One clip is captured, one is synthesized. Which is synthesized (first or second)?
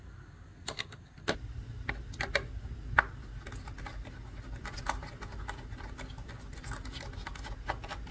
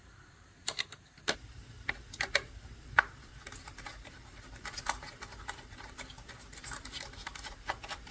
second